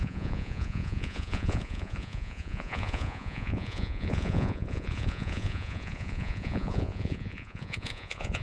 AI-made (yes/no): yes